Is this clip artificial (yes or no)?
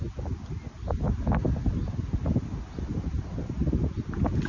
no